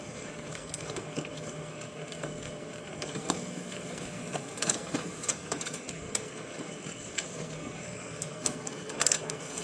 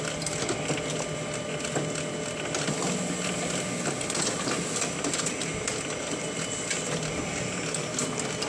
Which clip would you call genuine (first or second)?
second